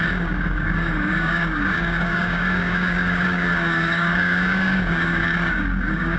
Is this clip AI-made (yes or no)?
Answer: yes